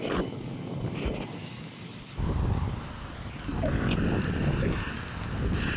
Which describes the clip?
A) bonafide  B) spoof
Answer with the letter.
A